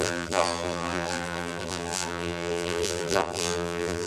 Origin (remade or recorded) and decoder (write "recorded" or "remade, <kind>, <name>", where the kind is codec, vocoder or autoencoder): remade, vocoder, BigVGAN v2